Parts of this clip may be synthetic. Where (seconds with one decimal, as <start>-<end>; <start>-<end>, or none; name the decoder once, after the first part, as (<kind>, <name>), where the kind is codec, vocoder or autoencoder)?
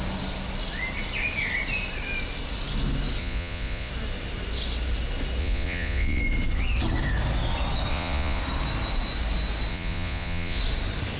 3.2-3.9 (vocoder, Vocos); 5.4-6.2; 7.9-8.4; 9.7-10.6